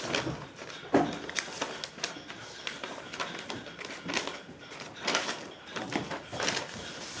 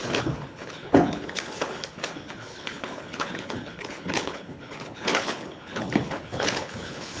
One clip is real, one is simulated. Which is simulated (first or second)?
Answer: second